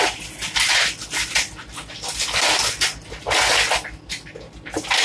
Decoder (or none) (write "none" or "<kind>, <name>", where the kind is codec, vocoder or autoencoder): none